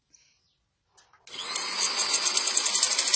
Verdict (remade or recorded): recorded